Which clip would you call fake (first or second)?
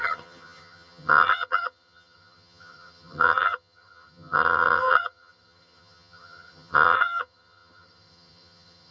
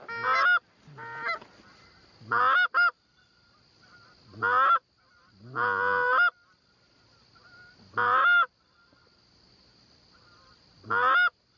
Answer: first